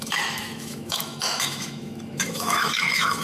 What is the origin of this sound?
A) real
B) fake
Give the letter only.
B